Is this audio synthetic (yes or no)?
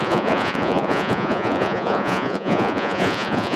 yes